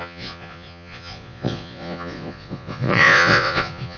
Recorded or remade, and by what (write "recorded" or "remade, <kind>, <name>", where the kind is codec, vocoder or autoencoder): remade, vocoder, Vocos